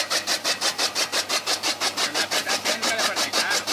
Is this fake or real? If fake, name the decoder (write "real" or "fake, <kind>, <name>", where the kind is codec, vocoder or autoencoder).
real